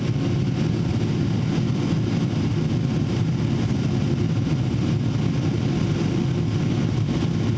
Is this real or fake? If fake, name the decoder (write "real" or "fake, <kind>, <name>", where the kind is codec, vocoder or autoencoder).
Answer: real